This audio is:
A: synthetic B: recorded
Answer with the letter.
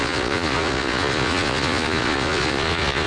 A